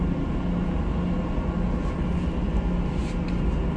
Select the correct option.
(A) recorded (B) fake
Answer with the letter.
A